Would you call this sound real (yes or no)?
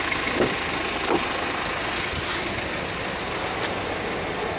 yes